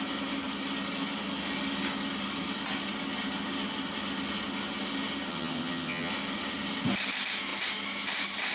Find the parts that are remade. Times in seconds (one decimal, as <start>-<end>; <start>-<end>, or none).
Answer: 5.3-6.1